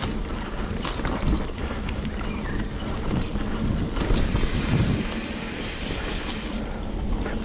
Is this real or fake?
real